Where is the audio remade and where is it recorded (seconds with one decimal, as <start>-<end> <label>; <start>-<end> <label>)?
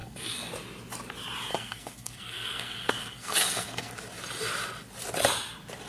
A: 0.0-0.5 remade; 0.5-1.5 recorded; 1.5-3.9 remade; 3.9-5.9 recorded